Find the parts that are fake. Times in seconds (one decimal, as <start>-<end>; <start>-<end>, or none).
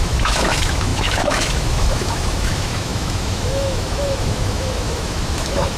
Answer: 0.0-5.8